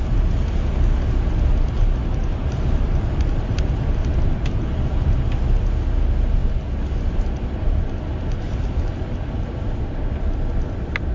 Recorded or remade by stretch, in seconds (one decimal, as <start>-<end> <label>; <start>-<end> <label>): 0.0-11.1 recorded